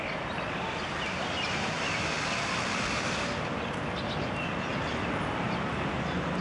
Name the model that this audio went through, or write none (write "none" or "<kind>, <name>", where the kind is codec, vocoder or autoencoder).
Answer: none